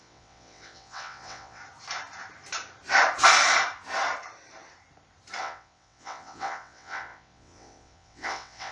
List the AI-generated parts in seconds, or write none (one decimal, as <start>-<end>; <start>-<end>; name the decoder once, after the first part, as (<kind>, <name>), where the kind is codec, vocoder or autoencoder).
0.0-1.6 (vocoder, WaveNeXt); 5.4-8.7